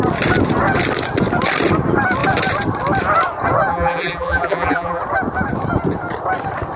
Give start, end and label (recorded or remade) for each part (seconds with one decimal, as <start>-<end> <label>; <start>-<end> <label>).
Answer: 0.0-3.7 recorded; 3.7-5.0 remade; 5.0-6.8 recorded

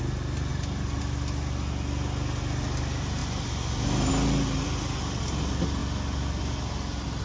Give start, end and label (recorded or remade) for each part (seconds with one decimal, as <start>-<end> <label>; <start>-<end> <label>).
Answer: 0.0-0.5 recorded; 0.5-1.0 remade; 1.0-7.2 recorded

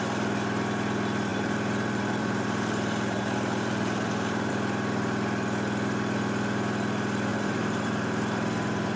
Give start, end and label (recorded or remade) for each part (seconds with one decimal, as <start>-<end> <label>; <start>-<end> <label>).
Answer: 0.0-1.3 recorded; 1.3-4.5 remade; 4.5-7.3 recorded; 7.3-9.0 remade

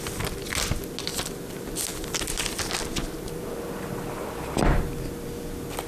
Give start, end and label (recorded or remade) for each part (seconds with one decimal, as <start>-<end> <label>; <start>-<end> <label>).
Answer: 0.0-1.9 recorded; 1.9-3.6 remade; 3.6-5.9 recorded